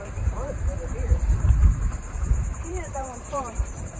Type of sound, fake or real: fake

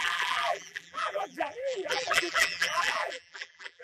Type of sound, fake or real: fake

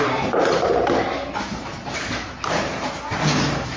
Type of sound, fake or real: fake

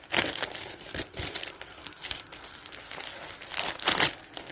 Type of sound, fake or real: fake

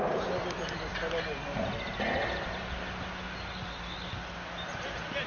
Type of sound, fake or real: real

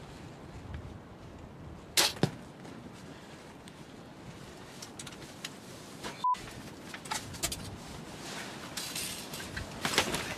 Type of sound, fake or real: real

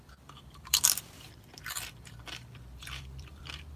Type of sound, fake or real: fake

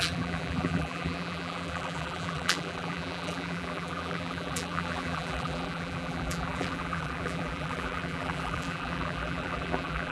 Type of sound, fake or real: fake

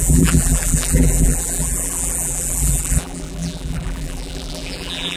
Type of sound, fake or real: fake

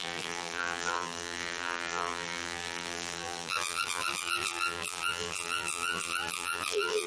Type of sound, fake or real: fake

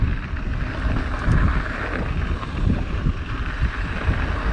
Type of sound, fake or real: real